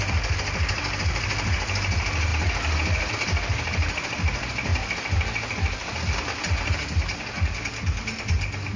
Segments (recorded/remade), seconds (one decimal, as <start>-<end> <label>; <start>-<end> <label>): 0.0-8.8 recorded